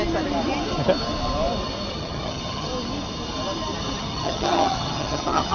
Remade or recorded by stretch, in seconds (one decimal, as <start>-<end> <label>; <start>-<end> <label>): 0.0-1.9 recorded; 1.9-2.7 remade; 2.7-4.0 recorded; 4.0-5.5 remade